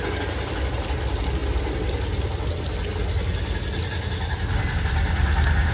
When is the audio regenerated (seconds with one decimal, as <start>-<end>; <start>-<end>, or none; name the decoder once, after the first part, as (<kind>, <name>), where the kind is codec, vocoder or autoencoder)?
none